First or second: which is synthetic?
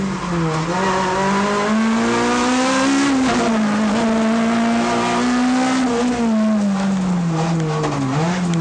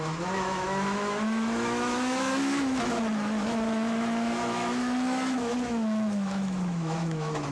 second